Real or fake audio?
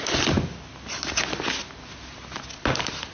real